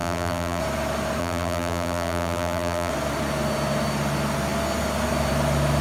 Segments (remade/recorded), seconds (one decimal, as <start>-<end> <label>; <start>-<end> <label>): 0.0-0.6 remade; 0.6-1.2 recorded; 1.2-2.9 remade; 2.9-5.8 recorded